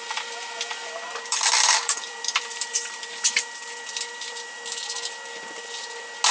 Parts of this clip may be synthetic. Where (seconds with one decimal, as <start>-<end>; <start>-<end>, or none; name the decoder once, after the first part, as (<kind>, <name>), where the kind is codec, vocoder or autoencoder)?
0.7-4.5 (vocoder, BigVGAN v2)